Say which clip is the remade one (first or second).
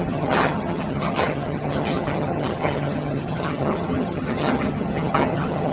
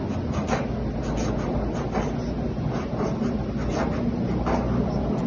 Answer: first